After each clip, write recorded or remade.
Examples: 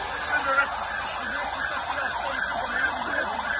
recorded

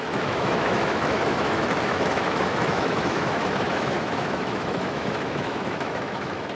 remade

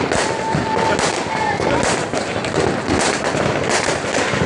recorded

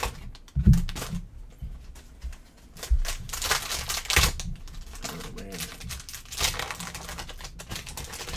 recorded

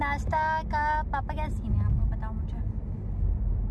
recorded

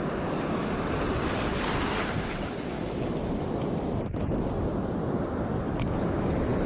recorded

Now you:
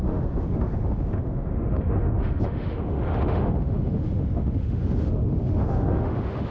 remade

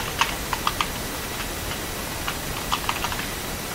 recorded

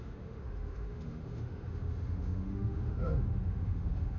remade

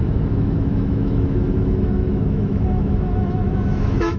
remade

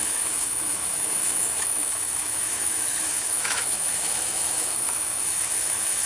remade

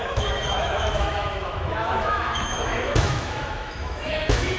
remade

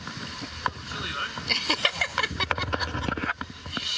recorded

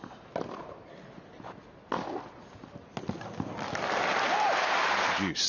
recorded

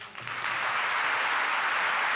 recorded